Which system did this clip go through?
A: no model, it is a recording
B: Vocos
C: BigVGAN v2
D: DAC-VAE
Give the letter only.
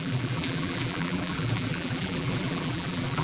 C